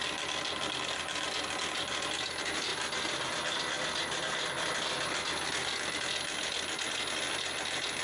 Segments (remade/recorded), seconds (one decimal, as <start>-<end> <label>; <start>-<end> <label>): 0.0-8.0 recorded

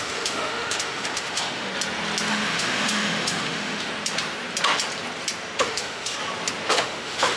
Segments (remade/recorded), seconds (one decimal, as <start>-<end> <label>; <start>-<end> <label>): 0.0-1.7 remade; 1.7-2.3 recorded; 2.3-3.9 remade; 3.9-5.6 recorded; 5.6-6.2 remade; 6.2-6.7 recorded; 6.7-7.4 remade

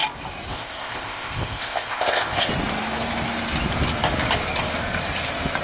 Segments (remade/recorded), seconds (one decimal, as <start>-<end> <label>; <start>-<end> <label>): 0.0-0.5 recorded; 0.5-2.5 remade; 2.5-5.6 recorded

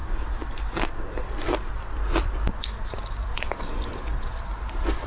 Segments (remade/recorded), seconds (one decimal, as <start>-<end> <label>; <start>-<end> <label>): 0.0-5.1 remade